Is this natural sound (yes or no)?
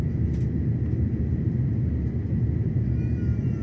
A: yes